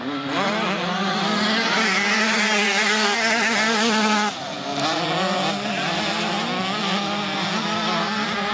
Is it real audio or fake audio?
real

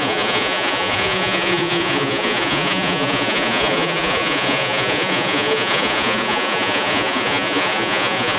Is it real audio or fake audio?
fake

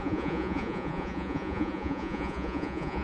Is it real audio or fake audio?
fake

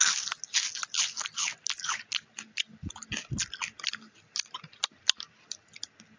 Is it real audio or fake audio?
real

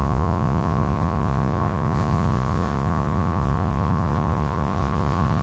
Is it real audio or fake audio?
fake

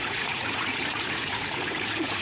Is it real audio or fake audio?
fake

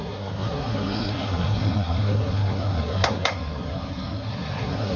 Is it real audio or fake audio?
fake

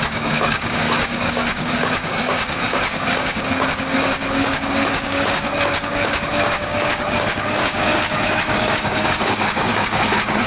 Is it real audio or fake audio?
fake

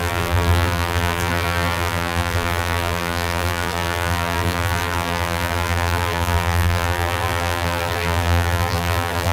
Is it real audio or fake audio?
fake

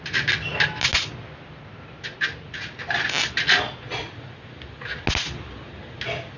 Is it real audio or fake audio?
real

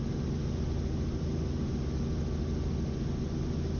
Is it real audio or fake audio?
real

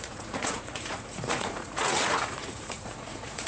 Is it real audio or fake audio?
fake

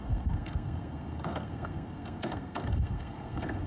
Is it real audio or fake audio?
fake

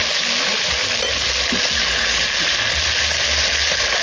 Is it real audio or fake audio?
real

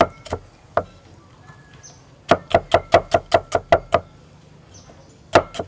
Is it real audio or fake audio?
real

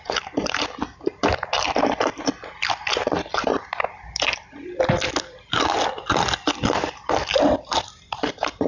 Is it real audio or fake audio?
fake